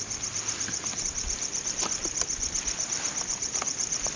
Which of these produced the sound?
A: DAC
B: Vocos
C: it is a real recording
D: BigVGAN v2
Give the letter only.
C